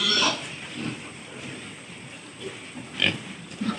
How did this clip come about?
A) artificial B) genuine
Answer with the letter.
A